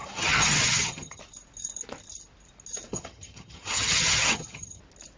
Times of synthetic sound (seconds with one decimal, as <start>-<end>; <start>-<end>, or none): 0.0-1.2; 2.9-4.8